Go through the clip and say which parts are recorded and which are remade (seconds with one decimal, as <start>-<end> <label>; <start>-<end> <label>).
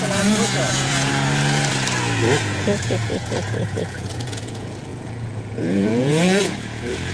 0.0-1.1 remade; 1.1-2.4 recorded; 2.4-7.1 remade